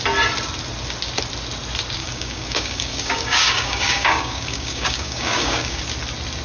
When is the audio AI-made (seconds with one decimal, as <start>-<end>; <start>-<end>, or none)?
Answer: 2.0-5.8